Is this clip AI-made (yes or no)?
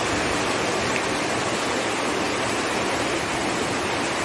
no